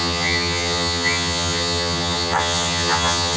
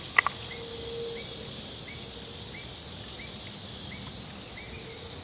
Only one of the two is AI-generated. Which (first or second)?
first